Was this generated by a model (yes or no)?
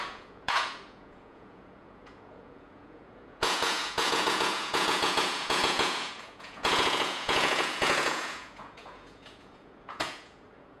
yes